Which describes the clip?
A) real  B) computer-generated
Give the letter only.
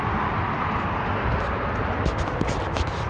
A